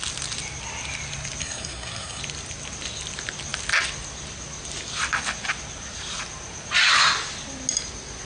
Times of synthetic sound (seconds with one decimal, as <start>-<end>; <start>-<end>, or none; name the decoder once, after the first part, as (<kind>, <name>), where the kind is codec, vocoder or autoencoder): 1.4-2.2 (codec, SNAC)